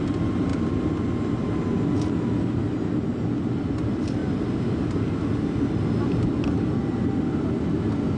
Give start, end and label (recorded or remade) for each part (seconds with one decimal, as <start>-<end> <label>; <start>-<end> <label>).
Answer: 0.0-8.2 recorded